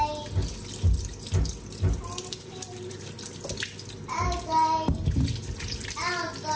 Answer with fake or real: real